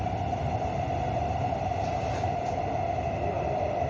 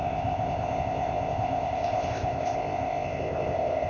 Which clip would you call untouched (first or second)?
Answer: first